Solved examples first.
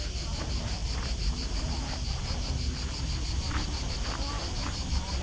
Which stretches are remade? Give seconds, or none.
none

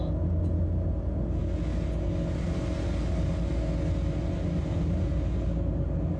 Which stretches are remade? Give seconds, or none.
none